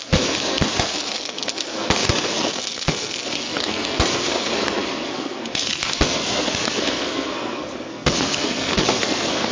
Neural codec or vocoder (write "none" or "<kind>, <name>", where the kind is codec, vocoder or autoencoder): codec, SNAC